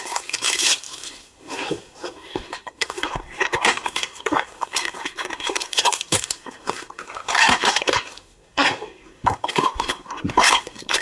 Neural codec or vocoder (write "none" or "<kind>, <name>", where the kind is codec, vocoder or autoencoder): codec, SNAC